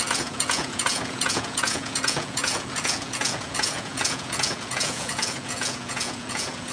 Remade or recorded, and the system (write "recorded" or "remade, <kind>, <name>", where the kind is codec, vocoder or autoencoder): remade, vocoder, Vocos